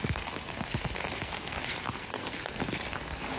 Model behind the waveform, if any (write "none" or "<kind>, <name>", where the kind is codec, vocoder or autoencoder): codec, SNAC